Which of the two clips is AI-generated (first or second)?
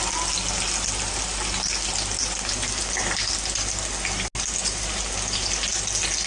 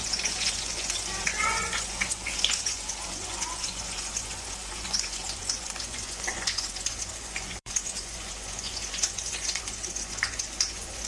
second